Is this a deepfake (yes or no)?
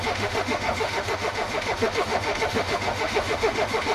yes